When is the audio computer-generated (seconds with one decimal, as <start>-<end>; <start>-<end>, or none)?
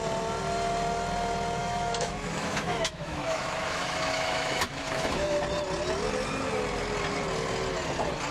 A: 1.6-5.4